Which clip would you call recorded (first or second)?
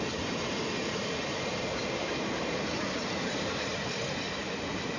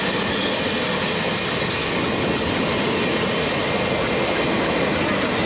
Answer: second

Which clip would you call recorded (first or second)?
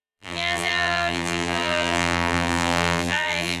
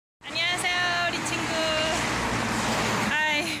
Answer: second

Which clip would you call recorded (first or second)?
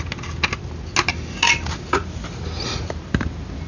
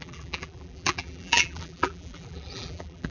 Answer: first